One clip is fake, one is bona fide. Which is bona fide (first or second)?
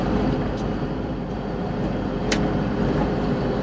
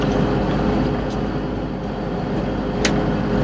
second